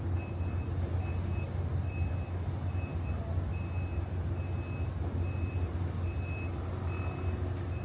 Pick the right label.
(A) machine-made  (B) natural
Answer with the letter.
B